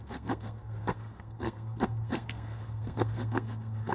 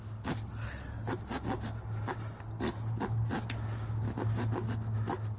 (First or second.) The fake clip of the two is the first